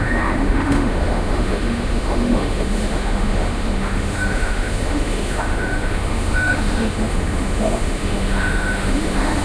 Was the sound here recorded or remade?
remade